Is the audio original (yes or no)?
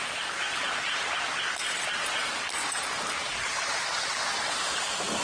yes